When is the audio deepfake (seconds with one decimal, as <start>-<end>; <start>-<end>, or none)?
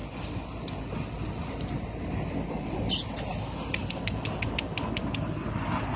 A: none